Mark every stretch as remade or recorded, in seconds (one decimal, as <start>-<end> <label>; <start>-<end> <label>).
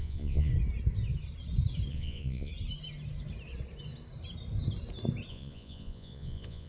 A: 0.0-0.5 remade; 0.5-1.9 recorded; 1.9-2.5 remade; 2.5-5.3 recorded; 5.3-6.7 remade